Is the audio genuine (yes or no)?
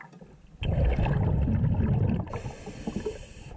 yes